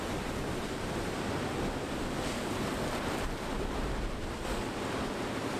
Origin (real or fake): real